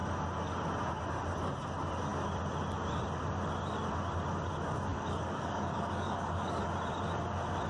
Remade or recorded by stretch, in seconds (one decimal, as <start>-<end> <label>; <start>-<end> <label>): 0.0-4.9 recorded; 4.9-6.6 remade; 6.6-7.7 recorded